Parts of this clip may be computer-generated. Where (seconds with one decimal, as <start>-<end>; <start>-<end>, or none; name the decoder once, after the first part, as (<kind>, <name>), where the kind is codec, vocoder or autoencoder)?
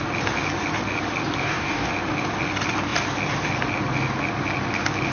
1.4-1.9 (codec, DAC)